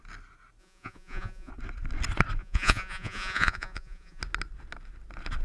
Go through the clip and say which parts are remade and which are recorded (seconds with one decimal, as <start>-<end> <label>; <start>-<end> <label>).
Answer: 0.0-0.6 recorded; 0.6-1.5 remade; 1.5-2.4 recorded; 2.4-4.2 remade; 4.2-5.4 recorded